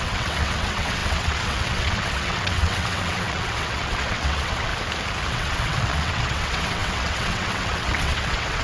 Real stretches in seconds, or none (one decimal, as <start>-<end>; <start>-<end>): 4.7-5.3